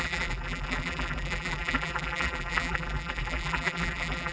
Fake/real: fake